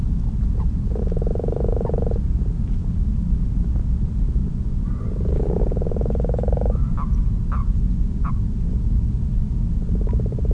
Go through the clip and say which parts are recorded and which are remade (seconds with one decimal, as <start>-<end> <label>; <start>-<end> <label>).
0.0-4.4 recorded; 4.4-5.1 remade; 5.1-7.6 recorded; 7.6-8.3 remade; 8.3-10.5 recorded